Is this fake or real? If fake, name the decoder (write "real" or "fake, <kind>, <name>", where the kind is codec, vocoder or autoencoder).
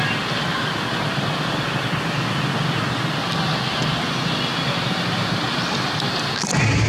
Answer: real